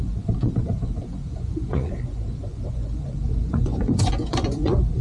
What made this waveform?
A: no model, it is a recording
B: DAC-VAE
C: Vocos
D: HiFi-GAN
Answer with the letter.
C